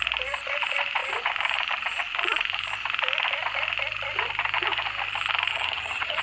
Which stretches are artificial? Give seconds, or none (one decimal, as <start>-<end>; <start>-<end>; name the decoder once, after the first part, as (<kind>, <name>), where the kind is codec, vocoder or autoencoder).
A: 5.5-6.2 (vocoder, HiFi-GAN)